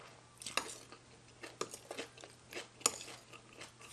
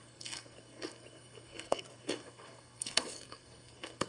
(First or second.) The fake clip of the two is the second